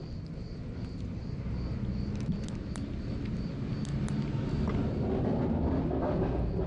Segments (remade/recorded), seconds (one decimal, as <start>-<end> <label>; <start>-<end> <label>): 0.0-6.7 recorded